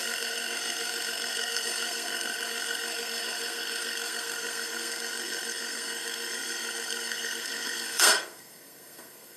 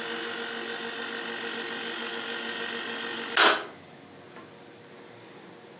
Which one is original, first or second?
second